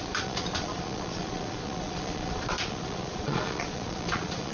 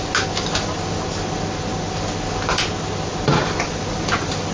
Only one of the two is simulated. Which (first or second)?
first